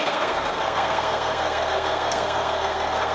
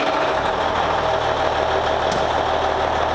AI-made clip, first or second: first